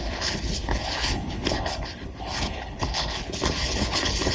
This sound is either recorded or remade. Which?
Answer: remade